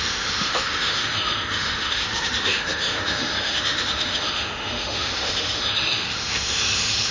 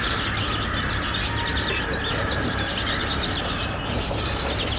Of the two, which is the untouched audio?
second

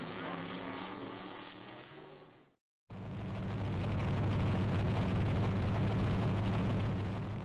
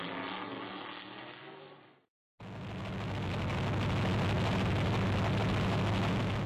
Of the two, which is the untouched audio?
second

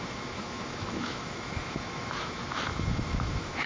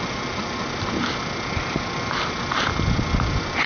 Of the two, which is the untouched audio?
second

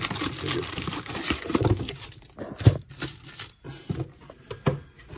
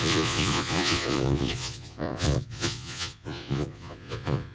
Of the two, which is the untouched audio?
first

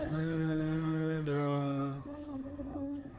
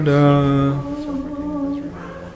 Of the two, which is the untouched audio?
second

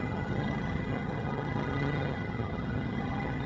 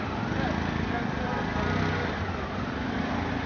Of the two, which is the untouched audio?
second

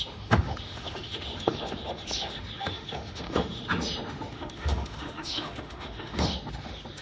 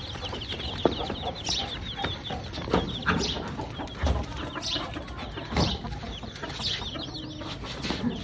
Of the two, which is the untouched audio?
second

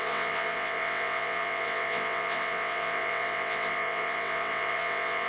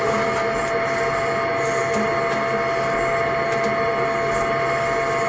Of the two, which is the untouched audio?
second